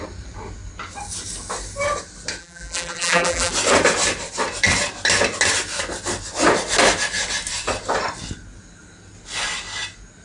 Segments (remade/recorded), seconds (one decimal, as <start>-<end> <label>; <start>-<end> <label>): 0.0-2.4 recorded; 2.4-3.5 remade; 3.5-10.2 recorded

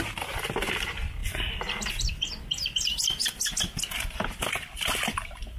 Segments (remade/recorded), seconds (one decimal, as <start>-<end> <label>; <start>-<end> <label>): 0.0-5.6 recorded

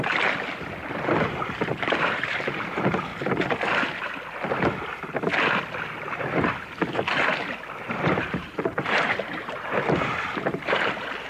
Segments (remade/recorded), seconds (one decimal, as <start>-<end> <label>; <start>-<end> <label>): 0.0-3.1 remade; 3.1-7.9 recorded; 7.9-11.3 remade

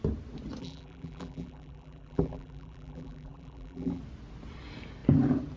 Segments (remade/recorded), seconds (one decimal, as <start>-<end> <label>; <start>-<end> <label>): 0.0-0.6 recorded; 0.6-4.0 remade; 4.0-5.6 recorded

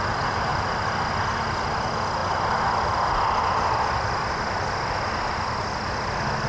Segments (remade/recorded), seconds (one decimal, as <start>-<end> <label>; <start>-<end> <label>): 0.0-0.5 recorded; 0.5-1.1 remade; 1.1-6.5 recorded

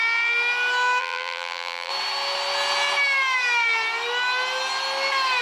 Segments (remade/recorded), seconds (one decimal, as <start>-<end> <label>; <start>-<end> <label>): 0.0-1.0 recorded; 1.0-1.9 remade; 1.9-5.4 recorded

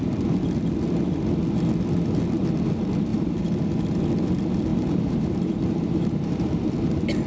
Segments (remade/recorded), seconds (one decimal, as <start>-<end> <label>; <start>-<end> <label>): 0.0-3.1 recorded; 3.1-3.6 remade; 3.6-4.7 recorded; 4.7-6.6 remade; 6.6-7.3 recorded

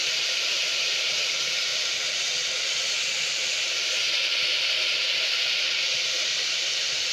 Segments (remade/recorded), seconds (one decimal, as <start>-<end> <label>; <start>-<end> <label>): 0.0-1.7 remade; 1.7-6.0 recorded; 6.0-7.1 remade